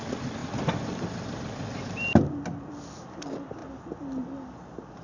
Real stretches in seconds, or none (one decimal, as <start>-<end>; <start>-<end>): 0.0-0.4; 1.4-5.0